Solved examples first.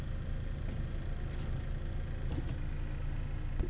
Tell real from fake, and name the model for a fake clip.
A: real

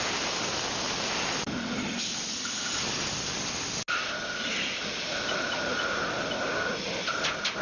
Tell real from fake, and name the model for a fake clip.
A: real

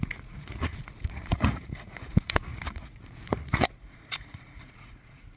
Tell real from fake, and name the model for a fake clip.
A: fake, vocoder, Vocos